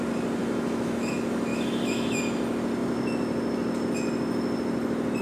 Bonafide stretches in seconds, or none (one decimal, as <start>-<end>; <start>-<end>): 0.0-0.4; 1.1-1.5; 2.2-5.2